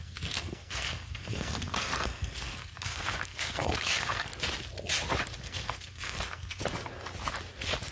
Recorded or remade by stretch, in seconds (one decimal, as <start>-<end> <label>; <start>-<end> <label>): 0.0-4.3 remade; 4.3-5.4 recorded; 5.4-6.6 remade; 6.6-7.9 recorded